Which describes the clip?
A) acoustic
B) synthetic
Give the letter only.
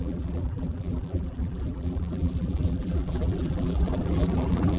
B